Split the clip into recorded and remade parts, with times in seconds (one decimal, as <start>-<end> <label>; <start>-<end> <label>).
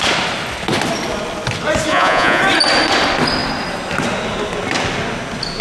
0.0-1.9 recorded; 1.9-2.4 remade; 2.4-5.6 recorded